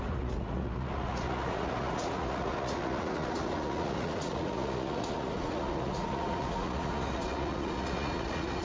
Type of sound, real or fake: fake